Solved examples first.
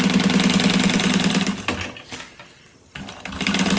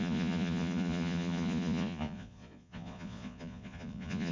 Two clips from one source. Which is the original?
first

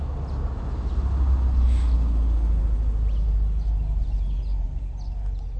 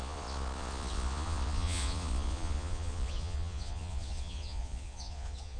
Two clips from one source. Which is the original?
first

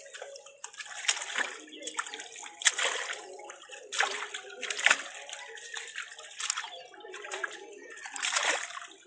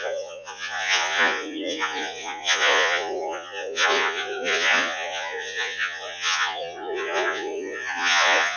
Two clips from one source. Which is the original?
first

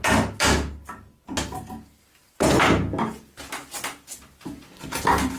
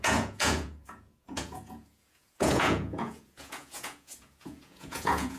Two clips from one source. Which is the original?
first